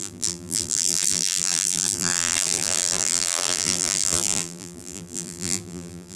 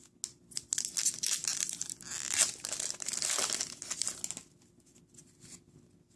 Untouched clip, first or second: second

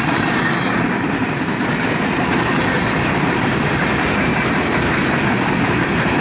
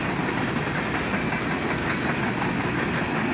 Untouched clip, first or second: second